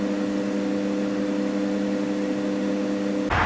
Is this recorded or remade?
recorded